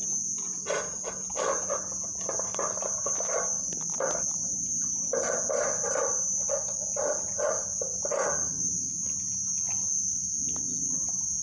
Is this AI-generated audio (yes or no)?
no